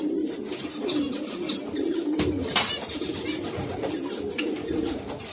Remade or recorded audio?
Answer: remade